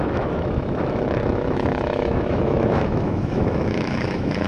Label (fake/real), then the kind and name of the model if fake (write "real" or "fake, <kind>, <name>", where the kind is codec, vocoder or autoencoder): fake, autoencoder, DAC-VAE